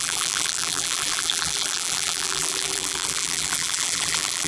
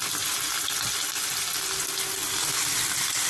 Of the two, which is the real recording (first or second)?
second